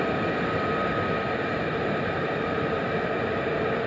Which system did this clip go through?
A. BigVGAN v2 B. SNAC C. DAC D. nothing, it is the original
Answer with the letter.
D